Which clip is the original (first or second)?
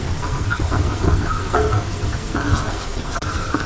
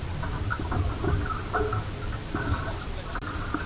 second